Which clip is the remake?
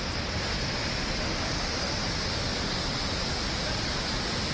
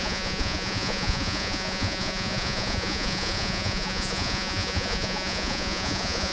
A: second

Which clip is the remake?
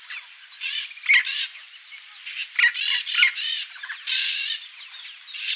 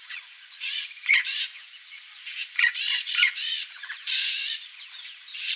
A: second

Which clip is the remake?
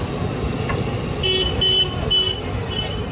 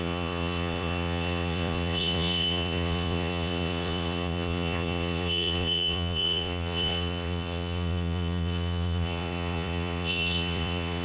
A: second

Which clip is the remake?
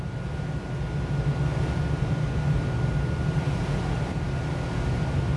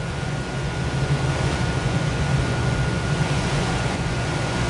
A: second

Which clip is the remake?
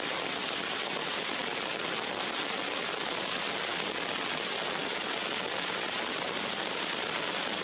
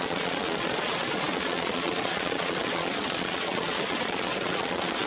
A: second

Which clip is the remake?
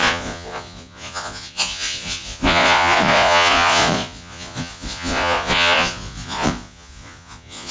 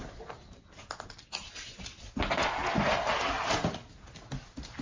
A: first